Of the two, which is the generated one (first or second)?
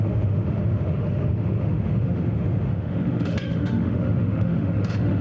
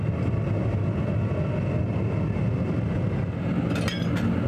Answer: first